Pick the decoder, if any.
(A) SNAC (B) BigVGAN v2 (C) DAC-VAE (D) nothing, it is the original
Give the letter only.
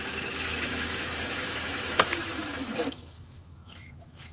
C